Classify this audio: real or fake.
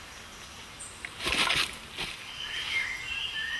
real